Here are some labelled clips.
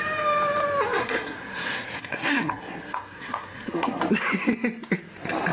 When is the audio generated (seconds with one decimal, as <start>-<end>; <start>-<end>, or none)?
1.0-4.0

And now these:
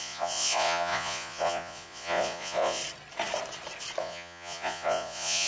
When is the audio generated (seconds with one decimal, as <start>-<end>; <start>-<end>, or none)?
0.0-2.8; 4.0-5.5

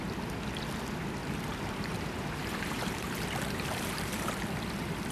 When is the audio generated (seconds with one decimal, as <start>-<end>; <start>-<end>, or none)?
1.2-4.3

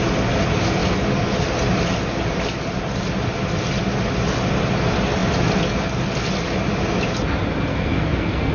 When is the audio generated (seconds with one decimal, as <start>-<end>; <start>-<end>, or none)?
7.7-8.5

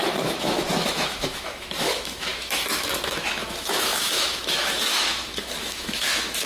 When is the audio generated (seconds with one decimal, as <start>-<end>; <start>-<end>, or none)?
0.0-6.5

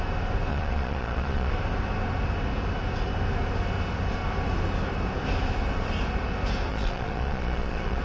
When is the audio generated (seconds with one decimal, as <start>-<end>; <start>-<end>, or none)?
0.5-1.5; 6.7-8.0

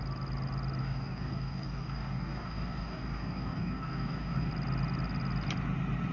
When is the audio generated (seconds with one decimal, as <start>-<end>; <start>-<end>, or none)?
0.8-4.5

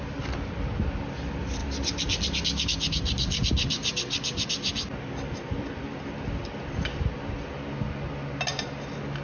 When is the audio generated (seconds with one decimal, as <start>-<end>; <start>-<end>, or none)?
none